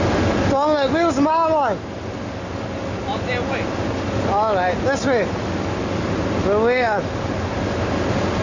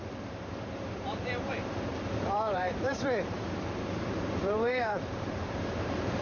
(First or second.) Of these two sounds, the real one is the first